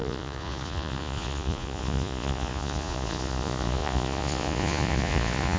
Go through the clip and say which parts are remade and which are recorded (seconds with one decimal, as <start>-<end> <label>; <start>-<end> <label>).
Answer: 0.0-5.6 remade